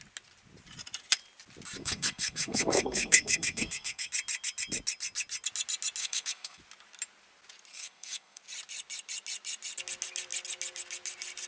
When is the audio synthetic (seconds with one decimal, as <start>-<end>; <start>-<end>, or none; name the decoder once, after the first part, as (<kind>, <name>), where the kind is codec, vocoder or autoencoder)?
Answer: 1.8-4.1 (codec, SNAC); 6.0-6.6; 7.7-8.4